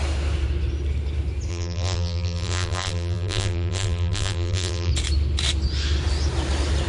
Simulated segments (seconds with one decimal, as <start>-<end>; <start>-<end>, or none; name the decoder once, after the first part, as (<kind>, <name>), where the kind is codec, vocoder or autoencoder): 1.5-4.9 (vocoder, BigVGAN v2)